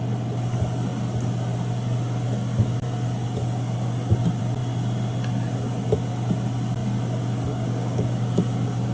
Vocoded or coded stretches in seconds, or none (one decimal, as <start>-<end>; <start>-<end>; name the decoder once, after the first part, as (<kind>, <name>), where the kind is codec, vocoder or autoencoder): 7.5-8.4 (codec, DAC)